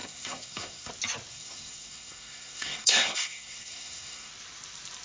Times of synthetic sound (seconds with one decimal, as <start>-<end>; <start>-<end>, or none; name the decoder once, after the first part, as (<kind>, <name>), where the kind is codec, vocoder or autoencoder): 0.0-0.9 (codec, SNAC); 1.3-4.3

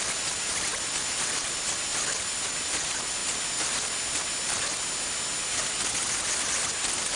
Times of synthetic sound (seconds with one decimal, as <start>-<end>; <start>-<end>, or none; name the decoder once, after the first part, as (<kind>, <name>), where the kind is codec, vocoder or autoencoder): none

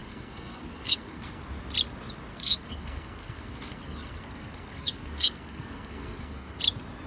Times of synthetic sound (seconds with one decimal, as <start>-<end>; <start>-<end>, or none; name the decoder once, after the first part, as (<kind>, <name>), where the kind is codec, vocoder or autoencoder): 0.0-1.4 (codec, SNAC); 2.3-6.6

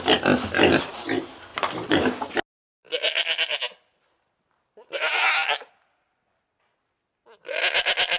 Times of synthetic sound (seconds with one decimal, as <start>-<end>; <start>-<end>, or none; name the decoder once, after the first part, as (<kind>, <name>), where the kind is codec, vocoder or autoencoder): none